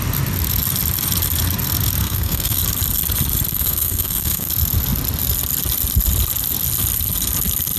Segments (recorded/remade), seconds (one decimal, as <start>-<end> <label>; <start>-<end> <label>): 0.0-2.0 recorded; 2.0-2.6 remade; 2.6-3.5 recorded; 3.5-4.5 remade; 4.5-7.8 recorded